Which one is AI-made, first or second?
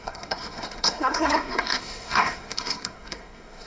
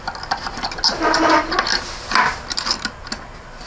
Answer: first